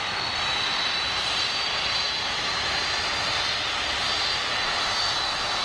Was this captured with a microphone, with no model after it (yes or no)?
yes